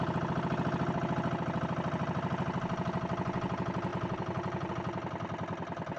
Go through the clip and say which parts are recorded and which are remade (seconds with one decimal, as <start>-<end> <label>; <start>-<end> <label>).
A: 0.0-3.9 recorded; 3.9-4.7 remade; 4.7-6.0 recorded